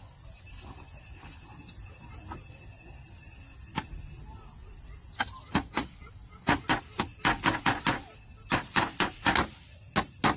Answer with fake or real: real